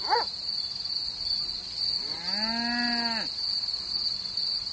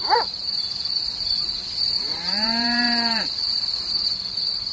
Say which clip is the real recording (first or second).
first